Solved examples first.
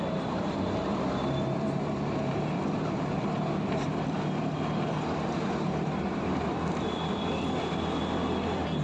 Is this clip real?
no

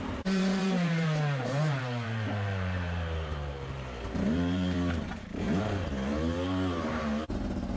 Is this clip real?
no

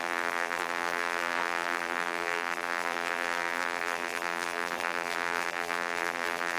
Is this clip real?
no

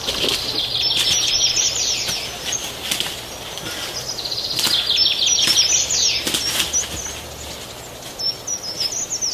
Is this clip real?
yes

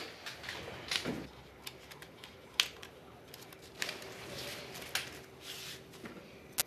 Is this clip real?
yes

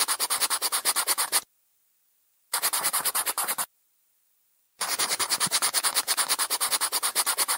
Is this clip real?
no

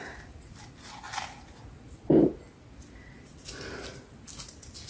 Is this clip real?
yes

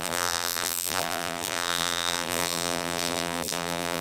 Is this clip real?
no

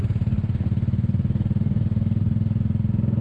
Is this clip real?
yes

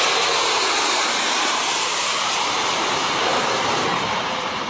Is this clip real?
no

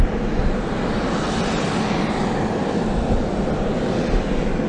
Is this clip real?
yes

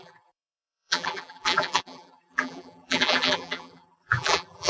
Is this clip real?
no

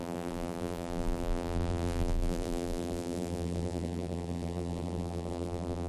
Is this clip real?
no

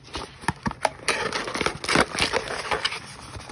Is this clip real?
yes